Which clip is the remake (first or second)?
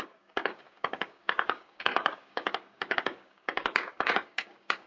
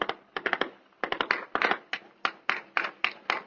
first